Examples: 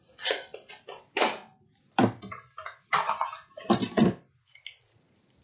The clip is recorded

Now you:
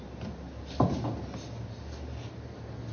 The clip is recorded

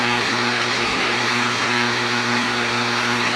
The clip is remade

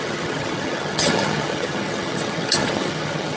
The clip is remade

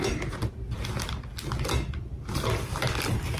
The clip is recorded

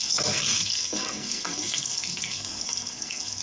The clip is remade